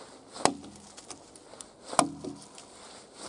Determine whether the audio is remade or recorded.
recorded